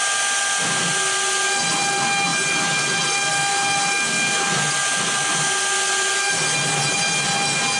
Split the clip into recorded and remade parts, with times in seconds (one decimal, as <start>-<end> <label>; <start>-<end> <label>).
0.0-7.8 recorded